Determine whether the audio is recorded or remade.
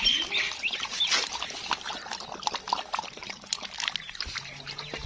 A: recorded